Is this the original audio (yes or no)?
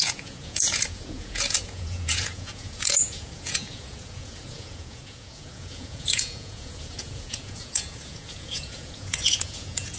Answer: no